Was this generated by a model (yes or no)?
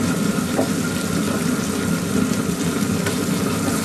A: no